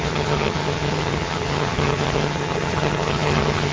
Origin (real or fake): fake